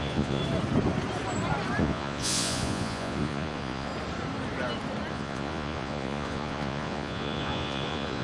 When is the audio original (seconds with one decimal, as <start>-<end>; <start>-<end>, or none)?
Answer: 0.4-1.8; 3.9-5.1